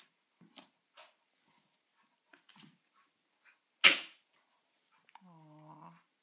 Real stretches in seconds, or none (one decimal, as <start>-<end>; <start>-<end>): 0.0-6.2